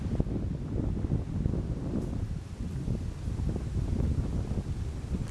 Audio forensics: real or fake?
real